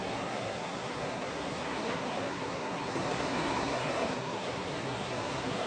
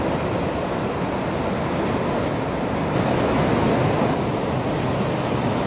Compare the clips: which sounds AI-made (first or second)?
first